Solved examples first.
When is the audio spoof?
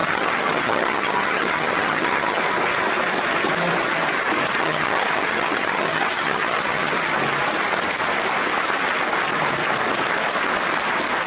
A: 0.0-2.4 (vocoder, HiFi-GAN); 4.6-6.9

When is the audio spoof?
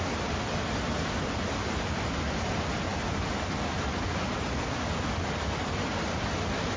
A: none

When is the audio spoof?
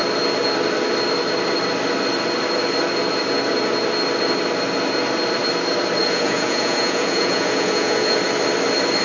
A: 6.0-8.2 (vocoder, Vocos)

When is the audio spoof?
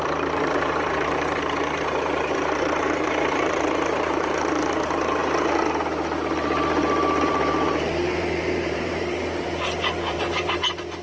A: 0.0-5.2 (vocoder, BigVGAN v2); 7.2-11.0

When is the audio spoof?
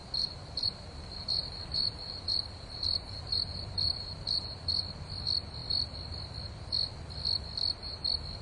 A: 0.0-4.7 (vocoder, BigVGAN v2)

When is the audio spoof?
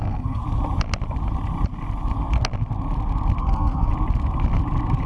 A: 0.0-0.4 (codec, SNAC); 3.4-3.9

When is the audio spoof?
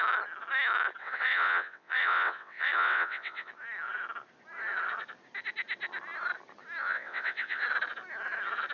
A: 1.0-3.5 (vocoder, WaveNeXt); 6.8-7.6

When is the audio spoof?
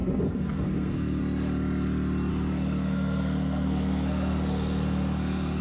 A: 0.0-1.2 (codec, SNAC); 2.3-5.6